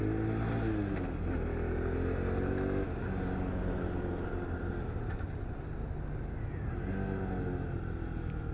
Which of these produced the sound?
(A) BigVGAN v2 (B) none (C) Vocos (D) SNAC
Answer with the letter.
B